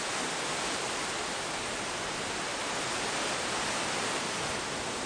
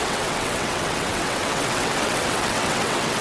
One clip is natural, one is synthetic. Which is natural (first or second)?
first